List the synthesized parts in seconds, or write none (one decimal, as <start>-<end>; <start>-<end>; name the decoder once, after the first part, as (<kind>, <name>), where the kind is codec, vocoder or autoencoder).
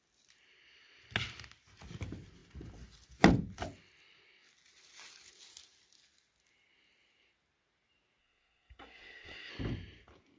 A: 8.2-9.5 (codec, SNAC)